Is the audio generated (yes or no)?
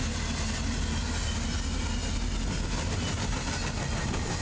no